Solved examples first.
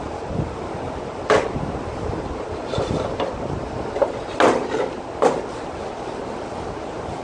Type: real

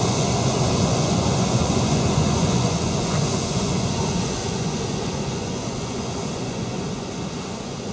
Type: fake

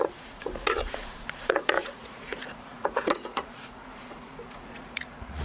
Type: fake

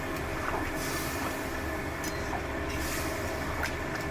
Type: real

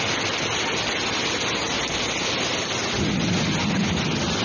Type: real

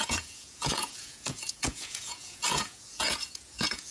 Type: fake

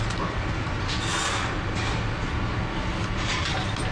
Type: real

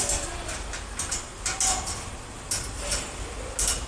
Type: real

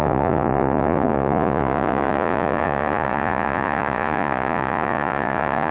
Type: fake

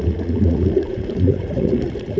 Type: fake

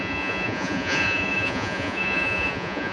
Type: fake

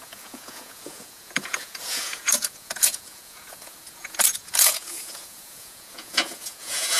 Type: fake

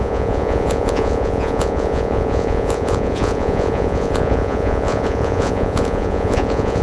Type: fake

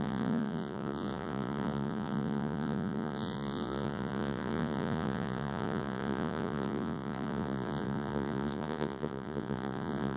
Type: fake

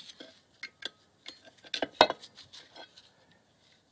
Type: real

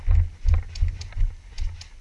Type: real